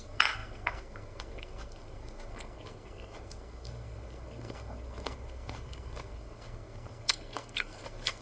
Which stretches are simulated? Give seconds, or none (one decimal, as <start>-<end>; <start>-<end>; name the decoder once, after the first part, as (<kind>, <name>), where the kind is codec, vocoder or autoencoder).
0.0-8.2 (codec, SNAC)